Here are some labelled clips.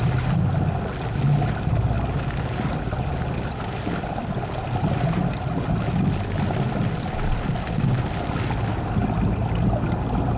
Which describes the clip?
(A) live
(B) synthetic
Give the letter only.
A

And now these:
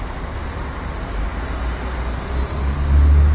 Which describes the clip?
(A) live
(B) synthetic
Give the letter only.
A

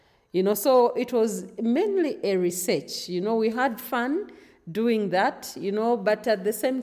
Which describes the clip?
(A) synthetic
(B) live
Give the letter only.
B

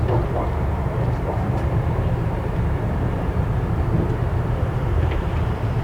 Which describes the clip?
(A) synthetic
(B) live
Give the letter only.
A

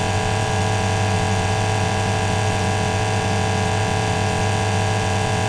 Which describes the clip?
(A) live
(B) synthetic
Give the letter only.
B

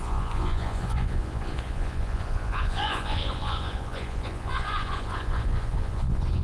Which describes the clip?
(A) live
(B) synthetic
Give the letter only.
B